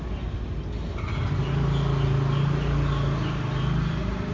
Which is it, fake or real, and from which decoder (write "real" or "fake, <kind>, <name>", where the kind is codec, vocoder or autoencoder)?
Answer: real